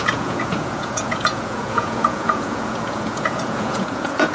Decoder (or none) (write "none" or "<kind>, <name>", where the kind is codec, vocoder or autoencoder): vocoder, Vocos